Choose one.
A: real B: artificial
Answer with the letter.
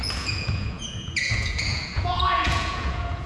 B